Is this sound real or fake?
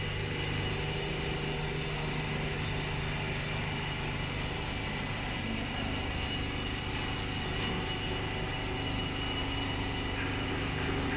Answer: real